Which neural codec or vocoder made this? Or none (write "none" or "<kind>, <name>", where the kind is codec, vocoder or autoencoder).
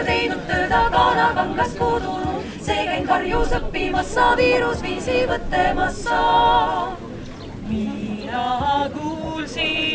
none